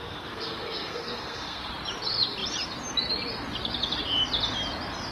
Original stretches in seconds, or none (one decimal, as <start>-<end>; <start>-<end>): 1.7-5.1